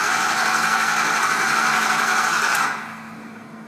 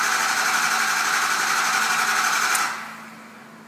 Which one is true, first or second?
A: second